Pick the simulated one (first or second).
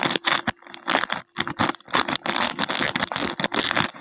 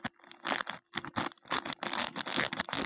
first